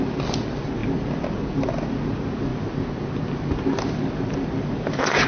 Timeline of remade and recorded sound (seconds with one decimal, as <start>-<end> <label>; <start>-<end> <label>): 0.0-5.3 recorded